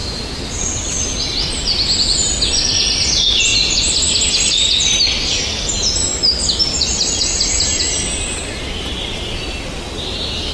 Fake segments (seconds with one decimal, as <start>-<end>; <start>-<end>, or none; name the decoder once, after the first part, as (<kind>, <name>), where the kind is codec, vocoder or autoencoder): 0.0-0.6 (vocoder, Vocos)